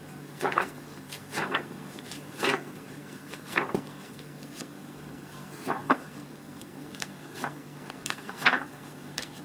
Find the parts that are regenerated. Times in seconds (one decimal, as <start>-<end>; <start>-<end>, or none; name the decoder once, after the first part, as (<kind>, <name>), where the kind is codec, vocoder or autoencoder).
0.0-9.4 (codec, SNAC)